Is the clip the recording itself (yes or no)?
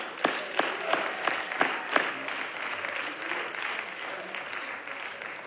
yes